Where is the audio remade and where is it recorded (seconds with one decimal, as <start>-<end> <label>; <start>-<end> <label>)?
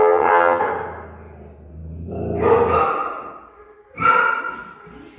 0.0-0.6 remade; 0.6-5.2 recorded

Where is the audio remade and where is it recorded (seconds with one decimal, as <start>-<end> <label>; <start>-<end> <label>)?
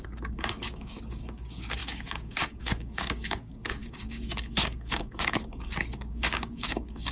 0.0-7.1 remade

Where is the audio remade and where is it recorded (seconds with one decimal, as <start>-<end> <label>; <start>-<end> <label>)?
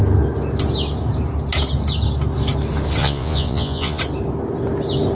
0.0-3.0 recorded; 3.0-4.0 remade; 4.0-5.1 recorded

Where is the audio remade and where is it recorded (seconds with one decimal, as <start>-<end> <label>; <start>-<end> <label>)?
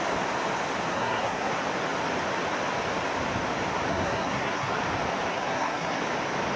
0.0-0.9 recorded; 0.9-1.5 remade; 1.5-3.9 recorded; 3.9-4.7 remade; 4.7-5.3 recorded; 5.3-6.0 remade; 6.0-6.6 recorded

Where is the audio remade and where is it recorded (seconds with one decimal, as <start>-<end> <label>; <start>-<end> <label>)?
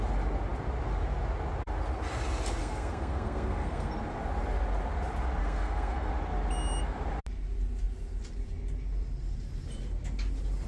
0.0-2.6 recorded; 2.6-3.9 remade; 3.9-5.4 recorded; 5.4-6.1 remade; 6.1-10.7 recorded